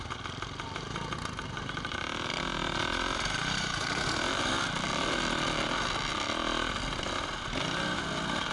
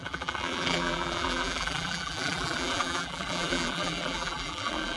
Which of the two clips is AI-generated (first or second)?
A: second